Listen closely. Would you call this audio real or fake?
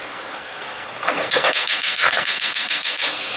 fake